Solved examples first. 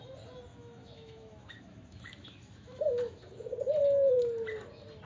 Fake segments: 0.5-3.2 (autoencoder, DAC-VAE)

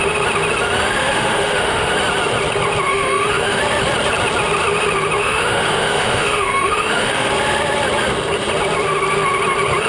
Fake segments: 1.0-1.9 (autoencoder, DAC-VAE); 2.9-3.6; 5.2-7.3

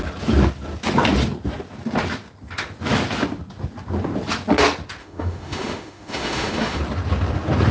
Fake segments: 5.0-6.8 (autoencoder, DAC-VAE)